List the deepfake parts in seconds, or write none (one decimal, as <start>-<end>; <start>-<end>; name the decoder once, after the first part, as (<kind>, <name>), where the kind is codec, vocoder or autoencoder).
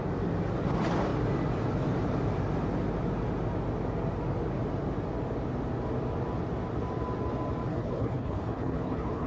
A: 7.7-9.3 (codec, HILCodec)